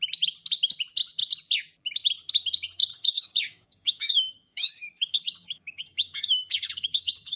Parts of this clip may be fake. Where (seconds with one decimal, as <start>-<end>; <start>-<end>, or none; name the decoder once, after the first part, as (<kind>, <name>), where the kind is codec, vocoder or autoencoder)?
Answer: 2.9-7.4 (codec, DAC)

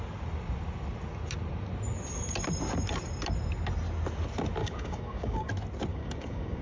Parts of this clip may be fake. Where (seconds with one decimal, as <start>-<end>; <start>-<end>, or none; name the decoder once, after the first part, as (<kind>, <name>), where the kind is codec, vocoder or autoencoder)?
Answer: 4.6-5.5 (codec, DAC); 5.9-6.6

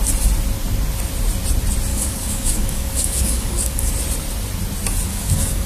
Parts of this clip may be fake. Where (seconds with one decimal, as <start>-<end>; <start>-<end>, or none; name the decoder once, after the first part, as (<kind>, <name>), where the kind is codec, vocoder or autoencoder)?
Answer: 1.9-3.9 (codec, DAC); 5.1-5.7

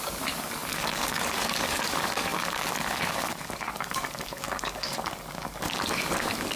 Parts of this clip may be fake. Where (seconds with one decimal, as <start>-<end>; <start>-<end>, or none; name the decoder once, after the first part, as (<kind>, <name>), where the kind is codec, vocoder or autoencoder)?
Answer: 0.0-6.6 (codec, DAC)

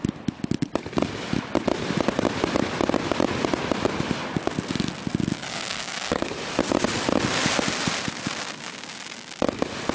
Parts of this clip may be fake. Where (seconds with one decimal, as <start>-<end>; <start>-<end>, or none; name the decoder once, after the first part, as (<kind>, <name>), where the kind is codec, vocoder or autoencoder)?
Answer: 5.5-6.3 (codec, DAC)

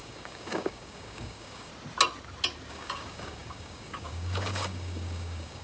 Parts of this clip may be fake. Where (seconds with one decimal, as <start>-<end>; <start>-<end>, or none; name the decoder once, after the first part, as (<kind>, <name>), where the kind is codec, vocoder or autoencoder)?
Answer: 0.0-1.7 (codec, DAC); 2.7-5.6

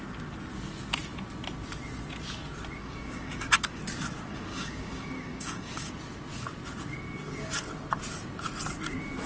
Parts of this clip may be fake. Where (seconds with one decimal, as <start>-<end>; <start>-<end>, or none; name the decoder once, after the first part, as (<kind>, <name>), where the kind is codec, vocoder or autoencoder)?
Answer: 2.8-3.8 (codec, DAC); 4.3-5.9

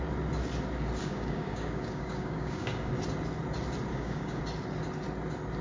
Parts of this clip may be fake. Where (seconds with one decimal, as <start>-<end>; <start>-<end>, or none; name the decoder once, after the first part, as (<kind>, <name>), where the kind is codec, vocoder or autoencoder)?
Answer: 1.0-2.9 (codec, DAC); 3.9-4.4